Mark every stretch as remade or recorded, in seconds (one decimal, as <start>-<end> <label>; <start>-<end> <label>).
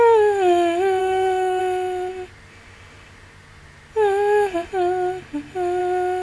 0.0-1.0 recorded; 1.0-1.6 remade; 1.6-6.2 recorded